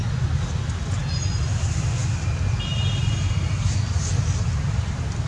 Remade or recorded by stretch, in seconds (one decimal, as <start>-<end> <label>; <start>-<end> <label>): 0.0-5.3 recorded